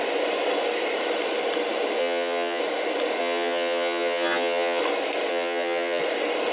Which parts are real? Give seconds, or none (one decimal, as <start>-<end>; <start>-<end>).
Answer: 0.0-2.0; 2.6-3.2; 4.8-5.3; 6.0-6.5